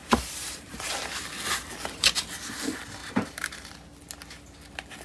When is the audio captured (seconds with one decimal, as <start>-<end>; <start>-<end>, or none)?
0.9-3.0; 3.7-5.0